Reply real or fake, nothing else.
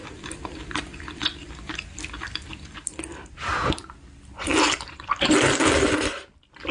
real